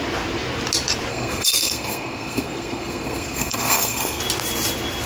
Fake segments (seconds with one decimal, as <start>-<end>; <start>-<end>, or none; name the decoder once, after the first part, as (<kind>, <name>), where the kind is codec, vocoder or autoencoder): 1.1-4.2 (codec, SNAC)